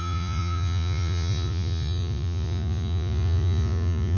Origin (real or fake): fake